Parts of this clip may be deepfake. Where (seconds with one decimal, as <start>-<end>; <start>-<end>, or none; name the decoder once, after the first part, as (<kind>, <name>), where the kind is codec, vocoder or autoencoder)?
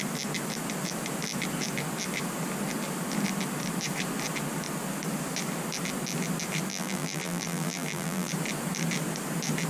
6.7-8.3 (vocoder, BigVGAN v2)